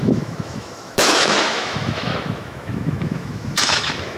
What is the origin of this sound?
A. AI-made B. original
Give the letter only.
A